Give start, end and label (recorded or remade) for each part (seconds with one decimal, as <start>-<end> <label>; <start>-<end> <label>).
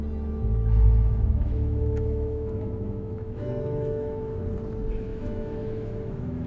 0.0-0.5 recorded; 0.5-4.4 remade; 4.4-5.1 recorded; 5.1-6.5 remade